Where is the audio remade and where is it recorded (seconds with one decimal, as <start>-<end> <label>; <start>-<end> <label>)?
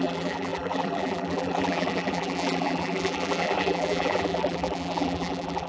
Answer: 0.0-5.7 remade